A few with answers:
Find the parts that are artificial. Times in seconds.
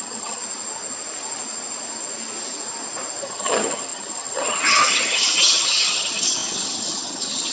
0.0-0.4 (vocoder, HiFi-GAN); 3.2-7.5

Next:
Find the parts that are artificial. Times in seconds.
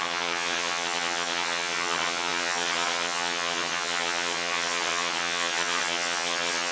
0.0-6.7 (vocoder, HiFi-GAN)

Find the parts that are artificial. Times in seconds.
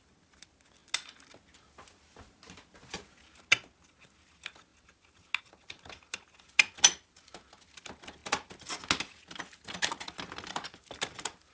none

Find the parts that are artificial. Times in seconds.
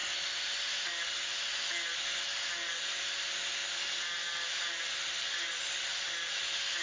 none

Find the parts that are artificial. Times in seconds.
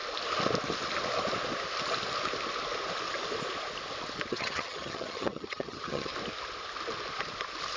4.3-6.1 (vocoder, HiFi-GAN)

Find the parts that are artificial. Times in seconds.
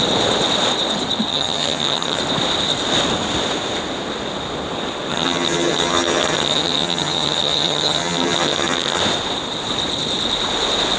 1.3-2.2 (vocoder, HiFi-GAN); 5.1-9.0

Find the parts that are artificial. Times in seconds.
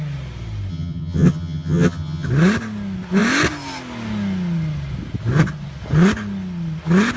0.7-2.3 (vocoder, HiFi-GAN)